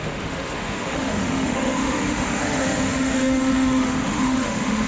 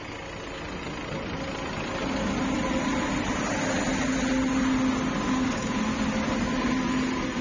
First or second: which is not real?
first